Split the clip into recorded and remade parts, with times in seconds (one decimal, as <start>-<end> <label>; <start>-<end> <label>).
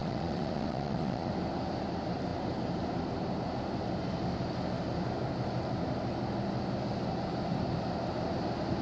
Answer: 0.0-1.3 remade; 1.3-8.8 recorded